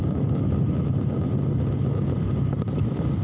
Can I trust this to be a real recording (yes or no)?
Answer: yes